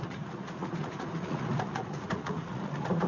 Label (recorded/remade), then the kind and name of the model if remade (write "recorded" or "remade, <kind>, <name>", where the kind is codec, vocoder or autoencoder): remade, vocoder, Vocos